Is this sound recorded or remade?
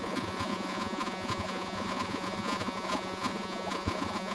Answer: remade